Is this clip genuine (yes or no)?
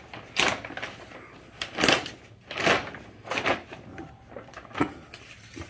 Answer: yes